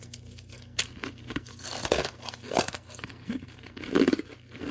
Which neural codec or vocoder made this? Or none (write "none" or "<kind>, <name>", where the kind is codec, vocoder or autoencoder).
codec, SNAC